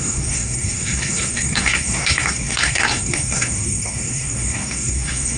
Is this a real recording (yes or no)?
no